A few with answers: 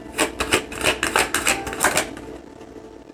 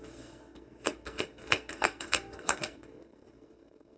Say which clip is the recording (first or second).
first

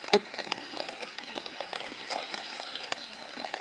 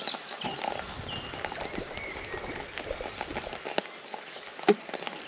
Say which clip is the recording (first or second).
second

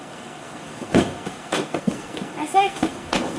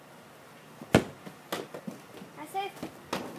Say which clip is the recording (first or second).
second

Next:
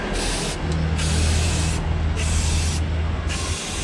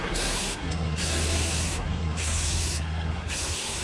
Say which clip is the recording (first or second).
first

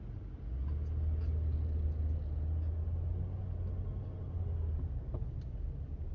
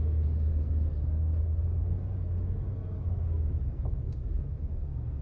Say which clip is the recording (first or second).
first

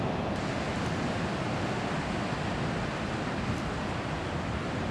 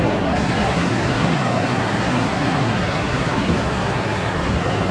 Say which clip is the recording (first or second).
first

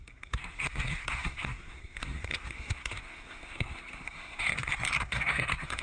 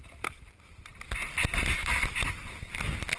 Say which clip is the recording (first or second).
second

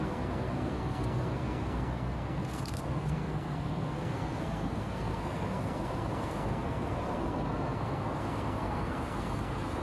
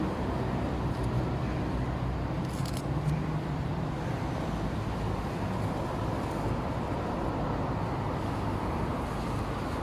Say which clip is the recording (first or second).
second